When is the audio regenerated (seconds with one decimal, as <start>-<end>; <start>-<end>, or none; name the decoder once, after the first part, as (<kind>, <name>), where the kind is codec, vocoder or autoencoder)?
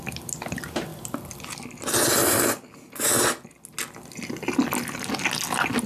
none